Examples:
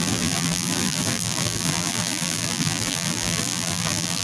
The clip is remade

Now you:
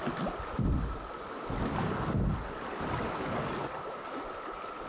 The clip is recorded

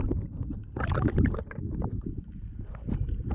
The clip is recorded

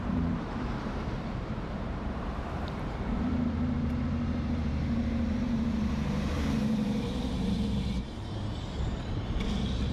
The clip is remade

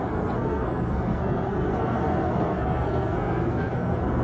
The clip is remade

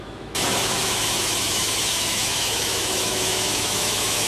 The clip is remade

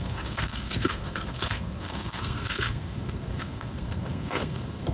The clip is remade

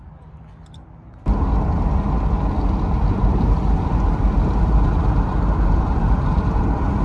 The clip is recorded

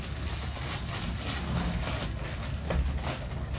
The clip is recorded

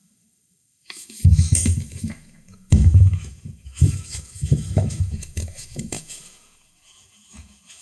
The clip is remade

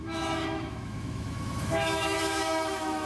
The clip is remade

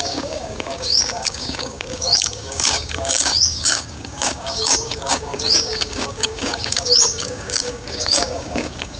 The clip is remade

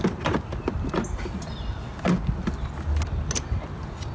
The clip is recorded